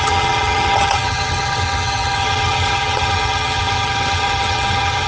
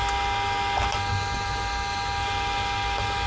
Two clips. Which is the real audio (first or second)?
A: second